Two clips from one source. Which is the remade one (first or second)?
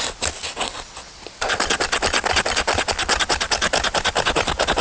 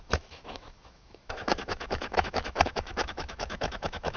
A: second